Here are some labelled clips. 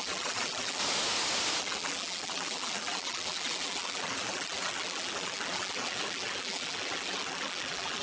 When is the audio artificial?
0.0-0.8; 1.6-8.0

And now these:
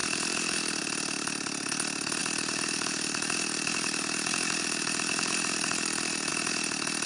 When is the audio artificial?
0.0-0.8; 2.2-6.3

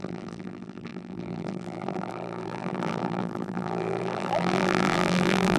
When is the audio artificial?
0.0-5.6